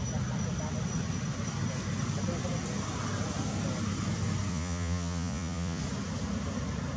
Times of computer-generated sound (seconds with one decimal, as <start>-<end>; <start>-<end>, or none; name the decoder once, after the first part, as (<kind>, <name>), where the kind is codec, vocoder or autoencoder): 4.5-5.8 (vocoder, Vocos)